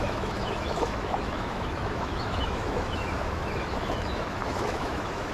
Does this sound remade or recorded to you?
remade